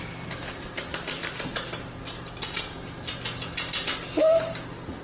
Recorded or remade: recorded